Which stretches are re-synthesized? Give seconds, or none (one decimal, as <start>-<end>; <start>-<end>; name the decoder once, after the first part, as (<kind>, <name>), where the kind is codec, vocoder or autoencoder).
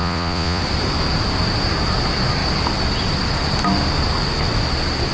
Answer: 0.0-0.6 (vocoder, Vocos)